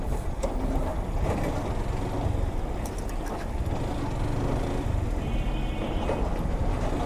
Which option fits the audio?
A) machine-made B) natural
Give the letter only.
B